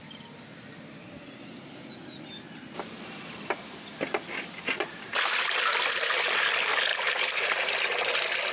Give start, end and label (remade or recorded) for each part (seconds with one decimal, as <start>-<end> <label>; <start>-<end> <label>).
0.0-6.9 recorded; 6.9-7.7 remade; 7.7-8.5 recorded